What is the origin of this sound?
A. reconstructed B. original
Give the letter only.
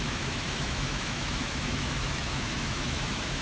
A